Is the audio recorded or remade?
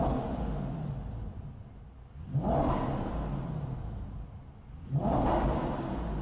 recorded